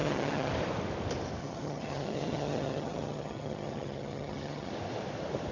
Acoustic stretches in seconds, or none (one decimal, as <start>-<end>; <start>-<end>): 0.5-1.4; 4.7-5.5